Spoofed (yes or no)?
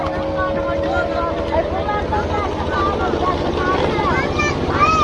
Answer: no